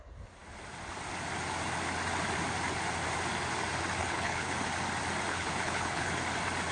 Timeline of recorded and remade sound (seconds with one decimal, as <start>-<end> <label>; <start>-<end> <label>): 0.0-4.0 recorded; 4.0-4.5 remade; 4.5-5.3 recorded; 5.3-6.1 remade; 6.1-6.7 recorded